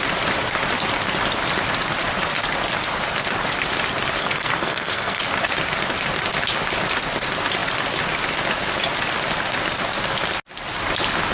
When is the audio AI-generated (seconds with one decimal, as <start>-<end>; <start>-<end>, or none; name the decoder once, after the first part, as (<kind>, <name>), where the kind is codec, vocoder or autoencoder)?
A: 4.2-5.2 (codec, SNAC)